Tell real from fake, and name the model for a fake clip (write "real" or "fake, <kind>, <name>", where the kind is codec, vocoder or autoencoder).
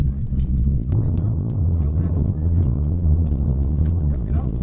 fake, vocoder, Vocos